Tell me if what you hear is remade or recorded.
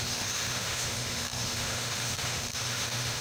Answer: remade